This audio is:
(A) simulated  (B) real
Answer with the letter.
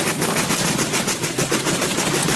B